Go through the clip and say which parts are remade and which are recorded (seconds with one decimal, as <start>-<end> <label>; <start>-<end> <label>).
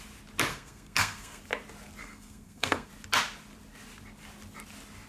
0.0-0.5 recorded; 0.5-1.4 remade; 1.4-2.0 recorded; 2.0-2.9 remade; 2.9-5.1 recorded